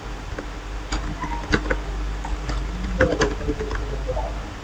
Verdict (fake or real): real